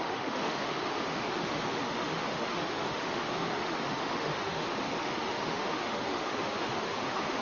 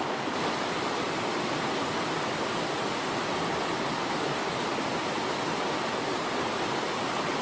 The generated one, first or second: first